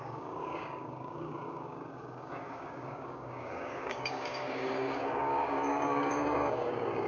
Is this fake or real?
fake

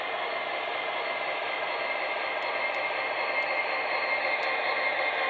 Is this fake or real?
real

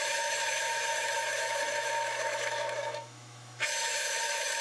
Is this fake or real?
fake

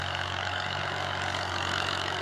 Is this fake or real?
fake